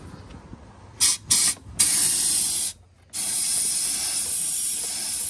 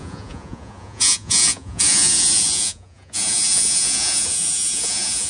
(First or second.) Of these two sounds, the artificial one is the second